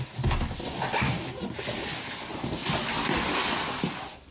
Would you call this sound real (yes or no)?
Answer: yes